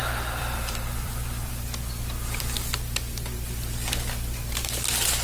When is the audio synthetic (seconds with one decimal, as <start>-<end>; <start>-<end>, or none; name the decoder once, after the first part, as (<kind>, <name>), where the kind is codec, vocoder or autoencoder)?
0.0-1.5 (vocoder, BigVGAN v2)